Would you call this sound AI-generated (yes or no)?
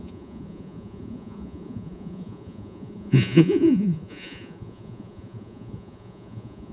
yes